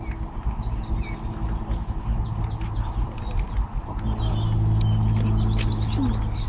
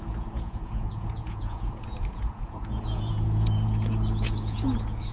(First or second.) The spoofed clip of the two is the second